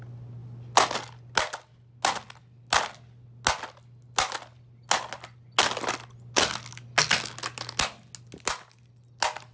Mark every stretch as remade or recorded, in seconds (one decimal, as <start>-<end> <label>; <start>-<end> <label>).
0.0-9.5 recorded